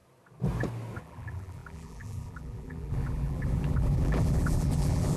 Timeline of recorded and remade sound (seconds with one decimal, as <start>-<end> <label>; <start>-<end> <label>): 0.0-1.0 recorded; 1.0-5.2 remade